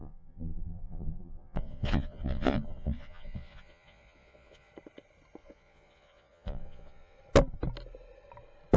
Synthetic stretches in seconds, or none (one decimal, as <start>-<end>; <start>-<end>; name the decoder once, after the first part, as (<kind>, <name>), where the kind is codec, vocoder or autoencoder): 0.0-4.7 (vocoder, Vocos); 5.4-7.2